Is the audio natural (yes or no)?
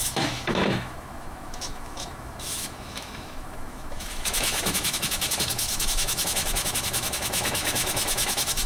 no